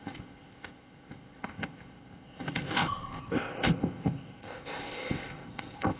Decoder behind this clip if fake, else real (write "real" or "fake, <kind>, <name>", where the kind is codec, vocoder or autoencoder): fake, codec, ZipCodec